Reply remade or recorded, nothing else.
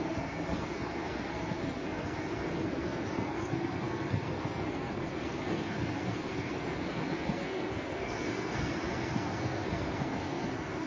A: remade